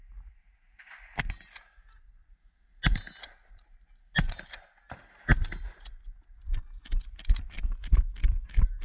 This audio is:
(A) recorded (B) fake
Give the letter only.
A